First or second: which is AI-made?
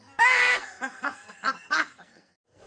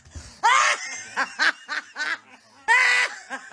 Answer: first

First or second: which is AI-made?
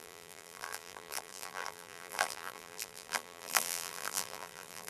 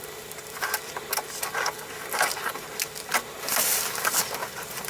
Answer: first